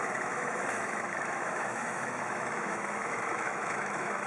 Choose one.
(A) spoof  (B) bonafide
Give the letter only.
A